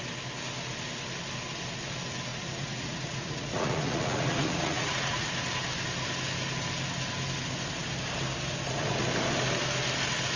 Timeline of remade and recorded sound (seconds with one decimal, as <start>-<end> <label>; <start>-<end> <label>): 0.0-2.3 recorded; 2.3-5.3 remade; 5.3-10.4 recorded